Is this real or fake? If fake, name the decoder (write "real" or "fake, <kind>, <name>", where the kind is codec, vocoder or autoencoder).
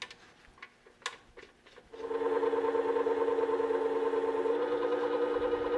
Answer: real